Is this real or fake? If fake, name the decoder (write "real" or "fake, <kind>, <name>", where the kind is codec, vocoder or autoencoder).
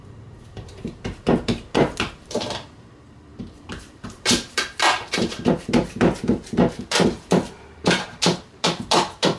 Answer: fake, vocoder, BigVGAN v2